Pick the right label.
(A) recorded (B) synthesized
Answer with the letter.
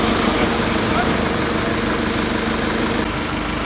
A